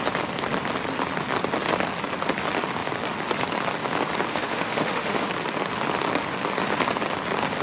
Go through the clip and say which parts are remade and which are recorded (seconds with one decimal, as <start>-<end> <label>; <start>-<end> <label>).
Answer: 0.0-4.3 recorded; 4.3-5.3 remade; 5.3-7.6 recorded

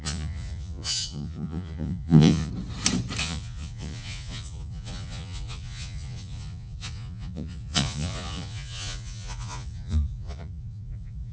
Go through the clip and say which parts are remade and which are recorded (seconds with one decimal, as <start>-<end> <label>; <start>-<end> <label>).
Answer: 0.0-2.5 remade; 2.5-3.2 recorded; 3.2-11.3 remade

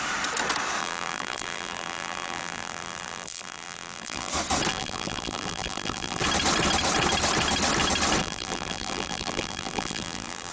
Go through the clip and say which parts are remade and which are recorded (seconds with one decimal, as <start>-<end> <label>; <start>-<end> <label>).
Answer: 0.0-0.8 recorded; 0.8-4.3 remade; 4.3-4.7 recorded; 4.7-6.2 remade; 6.2-8.2 recorded; 8.2-10.5 remade

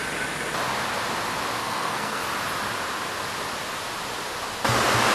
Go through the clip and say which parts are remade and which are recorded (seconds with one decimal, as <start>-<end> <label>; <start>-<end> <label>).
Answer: 0.0-1.6 recorded; 1.6-2.2 remade; 2.2-5.1 recorded

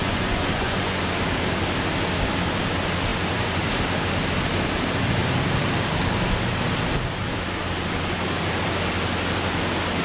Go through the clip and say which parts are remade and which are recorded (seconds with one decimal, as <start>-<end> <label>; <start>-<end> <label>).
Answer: 0.0-1.0 remade; 1.0-10.0 recorded

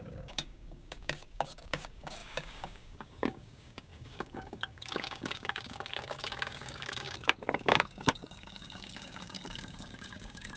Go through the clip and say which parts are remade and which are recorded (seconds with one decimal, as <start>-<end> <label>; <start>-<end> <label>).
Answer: 0.0-10.6 remade

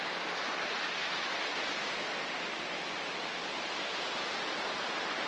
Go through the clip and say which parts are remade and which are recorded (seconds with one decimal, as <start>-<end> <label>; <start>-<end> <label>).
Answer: 0.0-5.3 recorded